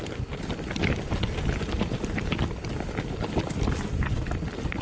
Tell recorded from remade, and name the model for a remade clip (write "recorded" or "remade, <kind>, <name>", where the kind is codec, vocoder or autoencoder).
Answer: recorded